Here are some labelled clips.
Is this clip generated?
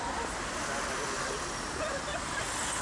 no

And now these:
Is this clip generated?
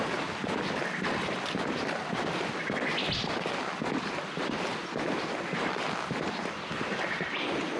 no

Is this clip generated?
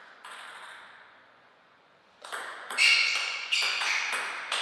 yes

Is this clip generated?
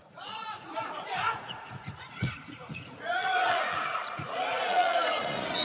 yes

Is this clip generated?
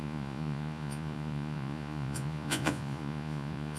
yes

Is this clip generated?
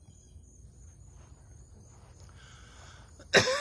no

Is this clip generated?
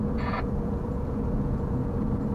yes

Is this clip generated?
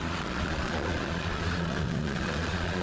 yes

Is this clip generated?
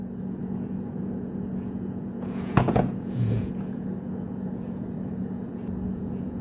yes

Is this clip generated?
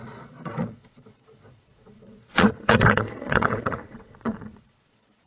yes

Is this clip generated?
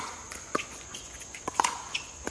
yes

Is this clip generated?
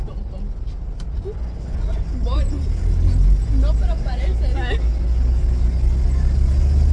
no